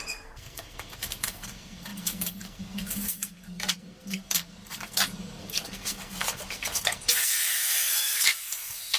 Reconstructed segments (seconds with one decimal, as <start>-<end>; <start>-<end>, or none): 0.0-9.0

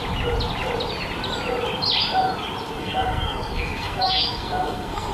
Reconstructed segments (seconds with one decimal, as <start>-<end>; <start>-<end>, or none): 2.8-5.1

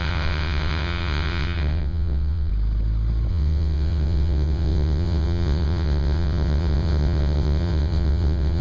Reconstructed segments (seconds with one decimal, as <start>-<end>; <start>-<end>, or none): 0.0-2.5; 3.3-8.6

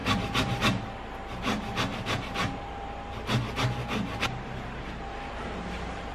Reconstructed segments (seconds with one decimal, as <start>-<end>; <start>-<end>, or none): 0.0-0.6; 1.9-3.4; 3.8-6.1

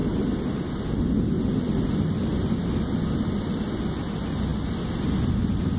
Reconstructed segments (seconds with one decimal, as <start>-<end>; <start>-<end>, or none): none

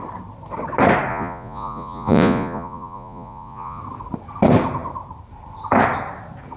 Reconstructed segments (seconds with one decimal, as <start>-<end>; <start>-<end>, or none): 1.1-3.8

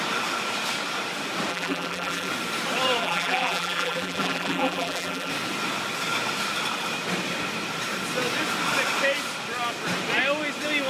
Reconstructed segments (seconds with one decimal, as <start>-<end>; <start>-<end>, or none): 1.5-2.3; 3.0-5.3

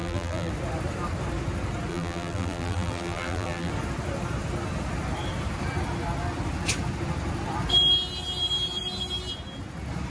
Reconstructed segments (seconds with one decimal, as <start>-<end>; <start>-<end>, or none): 0.0-0.5; 1.9-3.7